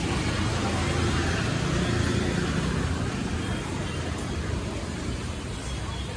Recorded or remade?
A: recorded